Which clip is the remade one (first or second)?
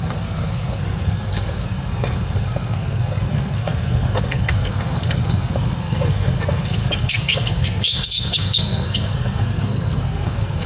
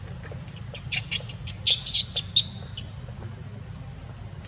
first